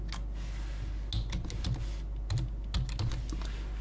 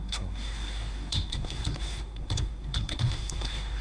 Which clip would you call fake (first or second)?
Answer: second